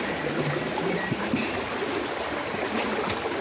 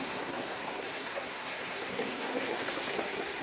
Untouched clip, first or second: first